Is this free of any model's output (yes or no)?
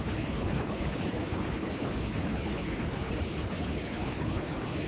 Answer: no